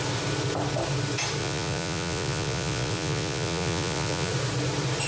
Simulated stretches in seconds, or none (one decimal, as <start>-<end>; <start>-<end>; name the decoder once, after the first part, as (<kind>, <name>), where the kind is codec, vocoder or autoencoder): 1.4-4.3 (vocoder, Vocos)